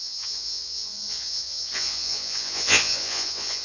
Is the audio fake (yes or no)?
yes